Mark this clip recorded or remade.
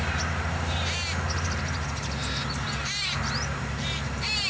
recorded